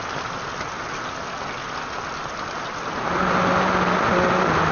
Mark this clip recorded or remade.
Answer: recorded